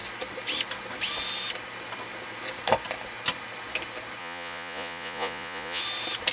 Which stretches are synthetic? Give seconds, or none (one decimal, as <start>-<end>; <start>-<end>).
4.2-5.8